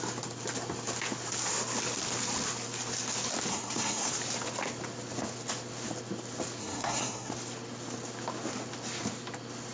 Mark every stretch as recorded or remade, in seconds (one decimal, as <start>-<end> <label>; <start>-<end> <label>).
0.0-3.5 recorded; 3.5-4.1 remade; 4.1-6.6 recorded; 6.6-7.3 remade; 7.3-9.7 recorded